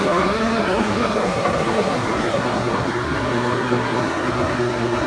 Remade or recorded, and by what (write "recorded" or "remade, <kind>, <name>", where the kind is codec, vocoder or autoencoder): remade, codec, SNAC